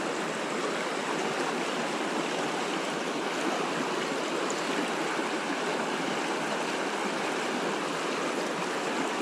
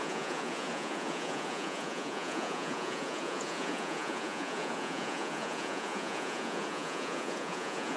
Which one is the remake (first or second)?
second